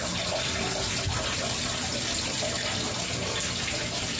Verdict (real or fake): real